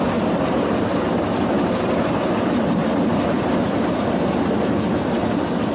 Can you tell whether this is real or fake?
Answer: real